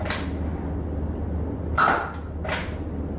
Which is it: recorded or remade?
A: recorded